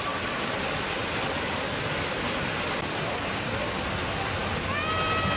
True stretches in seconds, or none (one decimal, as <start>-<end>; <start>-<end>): 0.0-5.4